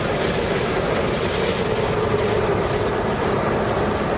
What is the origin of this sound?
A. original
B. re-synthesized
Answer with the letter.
A